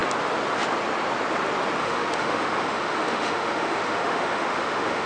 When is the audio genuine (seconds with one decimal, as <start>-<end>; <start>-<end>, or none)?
0.0-1.8